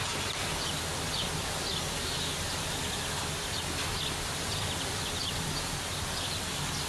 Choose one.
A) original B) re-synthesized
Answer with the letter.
A